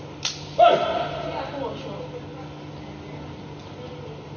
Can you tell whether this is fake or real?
real